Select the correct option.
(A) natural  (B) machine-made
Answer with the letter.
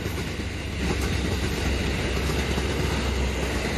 A